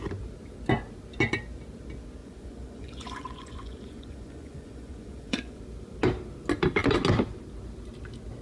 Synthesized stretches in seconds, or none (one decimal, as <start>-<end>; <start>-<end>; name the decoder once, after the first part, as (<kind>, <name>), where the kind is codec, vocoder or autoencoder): 2.2-5.6 (vocoder, Vocos)